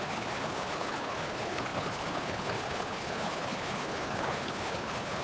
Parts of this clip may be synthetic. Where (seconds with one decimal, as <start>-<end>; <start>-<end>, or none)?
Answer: 0.0-5.2